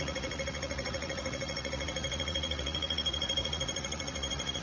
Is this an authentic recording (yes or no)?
no